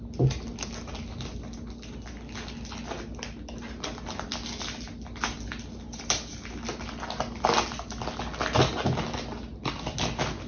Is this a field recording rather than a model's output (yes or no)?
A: yes